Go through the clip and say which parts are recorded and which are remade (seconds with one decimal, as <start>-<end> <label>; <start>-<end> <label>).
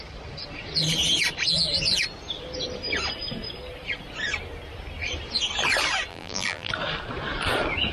0.0-6.1 recorded; 6.1-6.7 remade; 6.7-7.9 recorded